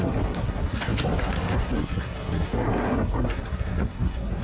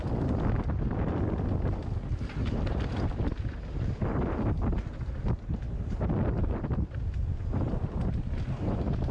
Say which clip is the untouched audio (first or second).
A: second